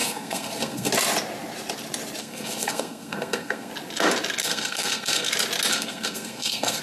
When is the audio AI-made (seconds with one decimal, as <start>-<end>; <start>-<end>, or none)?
0.0-0.9; 2.2-3.7; 4.4-5.3; 5.7-6.8